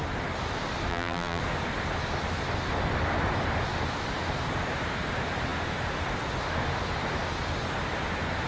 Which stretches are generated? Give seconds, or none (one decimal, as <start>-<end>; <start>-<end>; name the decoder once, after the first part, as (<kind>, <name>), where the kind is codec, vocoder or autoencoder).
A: 0.9-1.4 (vocoder, BigVGAN v2)